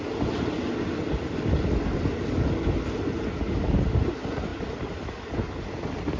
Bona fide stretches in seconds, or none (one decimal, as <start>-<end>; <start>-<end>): 0.0-6.2